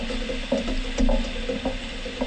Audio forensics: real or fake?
real